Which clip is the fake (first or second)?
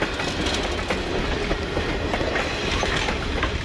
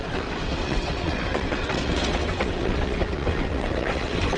second